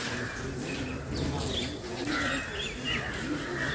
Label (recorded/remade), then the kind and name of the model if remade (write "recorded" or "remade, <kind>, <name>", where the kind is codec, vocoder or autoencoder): recorded